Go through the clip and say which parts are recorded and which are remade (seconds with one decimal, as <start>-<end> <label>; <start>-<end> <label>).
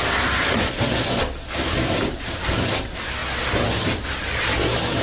0.0-3.2 remade; 3.2-3.8 recorded; 3.8-5.0 remade